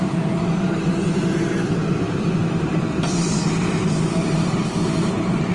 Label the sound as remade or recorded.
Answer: remade